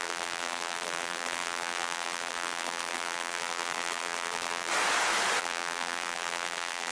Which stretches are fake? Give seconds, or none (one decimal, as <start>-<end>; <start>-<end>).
0.0-4.7; 5.4-6.9